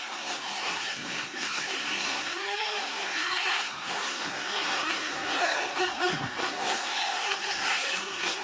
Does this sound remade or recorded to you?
remade